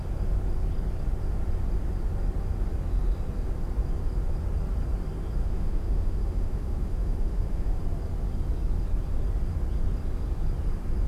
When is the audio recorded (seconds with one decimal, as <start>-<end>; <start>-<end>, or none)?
0.0-5.4; 7.8-11.1